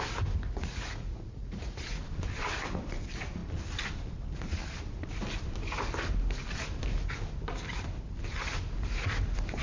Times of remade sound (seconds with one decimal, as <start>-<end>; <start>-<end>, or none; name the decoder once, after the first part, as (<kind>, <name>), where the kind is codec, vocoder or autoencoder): 0.5-2.0 (vocoder, Vocos)